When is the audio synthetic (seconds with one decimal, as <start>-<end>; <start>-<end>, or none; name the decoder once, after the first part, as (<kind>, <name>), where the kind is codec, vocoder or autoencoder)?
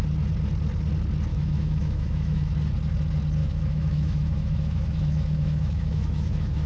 1.3-2.5 (autoencoder, DAC-VAE); 3.4-6.7